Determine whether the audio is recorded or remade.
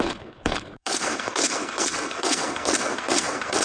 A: remade